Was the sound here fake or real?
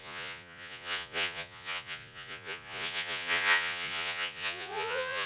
fake